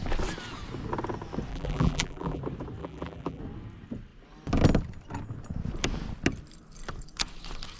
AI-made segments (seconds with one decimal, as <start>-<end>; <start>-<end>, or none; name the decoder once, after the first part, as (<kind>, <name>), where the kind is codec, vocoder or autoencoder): 1.5-2.4 (vocoder, BigVGAN v2); 2.8-3.4